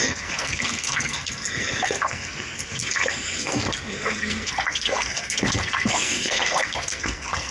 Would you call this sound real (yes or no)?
no